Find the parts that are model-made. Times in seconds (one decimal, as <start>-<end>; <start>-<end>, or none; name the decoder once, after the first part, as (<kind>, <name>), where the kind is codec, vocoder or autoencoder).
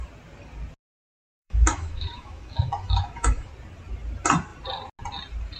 1.1-3.5 (autoencoder, DAC-VAE)